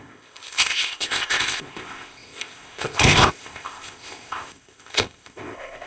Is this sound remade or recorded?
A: remade